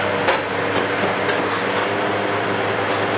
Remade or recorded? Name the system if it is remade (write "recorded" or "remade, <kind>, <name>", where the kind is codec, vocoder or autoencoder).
recorded